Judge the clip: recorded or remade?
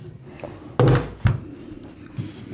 recorded